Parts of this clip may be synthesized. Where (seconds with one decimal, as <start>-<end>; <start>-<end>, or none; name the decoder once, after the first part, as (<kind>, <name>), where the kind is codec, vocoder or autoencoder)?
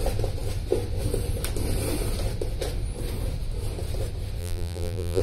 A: 4.4-5.2 (vocoder, BigVGAN v2)